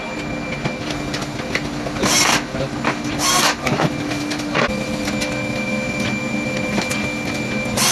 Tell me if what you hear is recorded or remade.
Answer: recorded